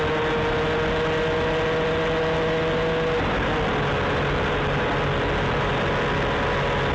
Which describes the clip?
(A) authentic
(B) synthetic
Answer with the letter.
A